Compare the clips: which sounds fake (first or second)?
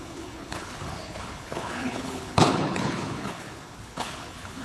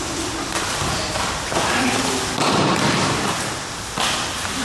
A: first